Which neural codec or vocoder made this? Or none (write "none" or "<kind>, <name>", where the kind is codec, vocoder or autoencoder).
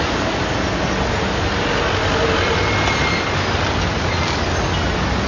none